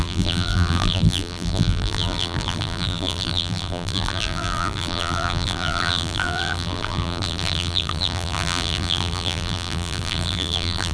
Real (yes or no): no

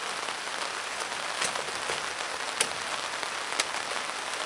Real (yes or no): yes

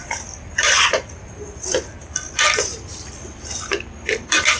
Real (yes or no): no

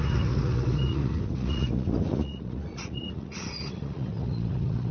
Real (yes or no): no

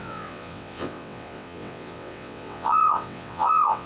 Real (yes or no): no